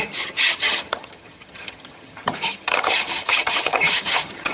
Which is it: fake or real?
fake